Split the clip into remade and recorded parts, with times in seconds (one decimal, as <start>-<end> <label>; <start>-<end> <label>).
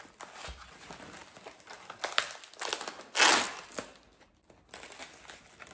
0.0-5.7 recorded